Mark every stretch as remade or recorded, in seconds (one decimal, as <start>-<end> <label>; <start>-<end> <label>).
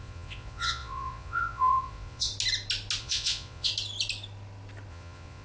0.0-2.3 remade; 2.3-3.0 recorded; 3.0-3.7 remade; 3.7-4.9 recorded; 4.9-5.4 remade